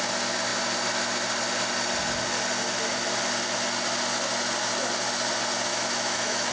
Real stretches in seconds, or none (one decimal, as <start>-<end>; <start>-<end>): 0.0-5.7

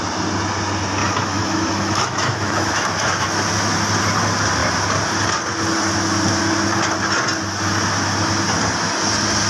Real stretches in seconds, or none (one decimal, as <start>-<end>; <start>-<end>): 0.0-1.0; 3.8-9.5

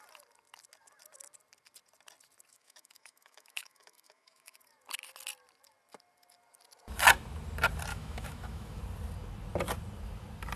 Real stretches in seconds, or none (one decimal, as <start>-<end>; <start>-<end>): 0.0-2.5; 4.6-7.9; 8.8-10.6

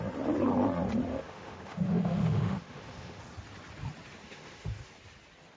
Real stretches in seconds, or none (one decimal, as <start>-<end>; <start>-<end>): 0.0-1.1; 3.2-4.2; 4.9-5.6

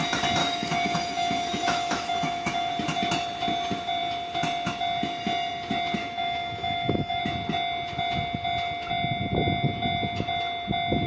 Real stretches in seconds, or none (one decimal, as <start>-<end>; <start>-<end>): 0.0-0.4; 2.7-6.0; 7.2-11.1

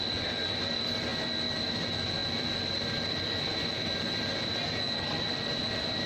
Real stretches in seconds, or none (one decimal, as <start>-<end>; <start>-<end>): 0.0-6.1